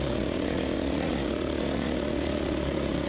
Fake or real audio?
fake